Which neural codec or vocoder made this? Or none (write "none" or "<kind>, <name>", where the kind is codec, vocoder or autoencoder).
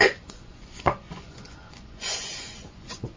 vocoder, Vocos